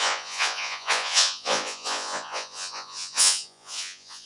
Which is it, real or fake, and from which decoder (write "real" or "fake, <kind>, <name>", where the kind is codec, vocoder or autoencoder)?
fake, vocoder, Vocos